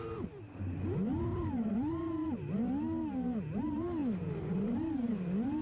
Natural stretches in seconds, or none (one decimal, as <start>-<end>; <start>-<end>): 0.0-1.3; 2.2-4.0; 5.1-5.6